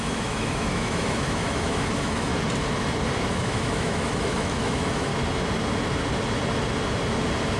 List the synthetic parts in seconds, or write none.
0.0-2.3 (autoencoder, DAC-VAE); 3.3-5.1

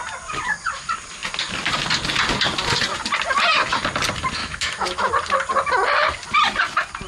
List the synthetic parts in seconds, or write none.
4.4-5.1 (autoencoder, DAC-VAE)

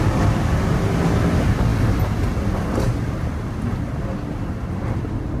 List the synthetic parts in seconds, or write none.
none